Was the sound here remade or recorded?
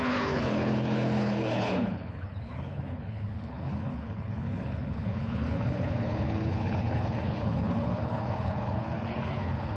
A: remade